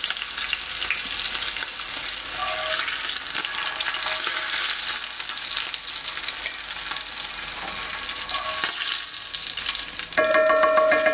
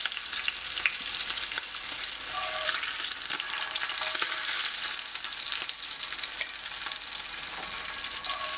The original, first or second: first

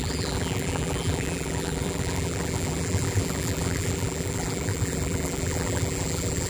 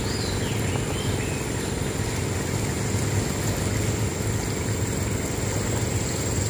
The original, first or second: second